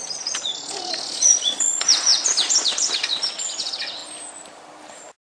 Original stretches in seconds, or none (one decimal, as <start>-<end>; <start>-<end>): 4.0-5.2